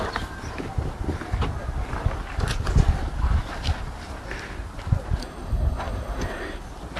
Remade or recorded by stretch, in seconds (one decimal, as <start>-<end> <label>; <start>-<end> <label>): 0.0-5.2 recorded; 5.2-6.6 remade; 6.6-7.0 recorded